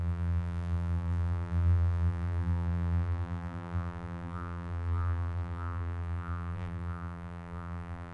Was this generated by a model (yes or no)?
yes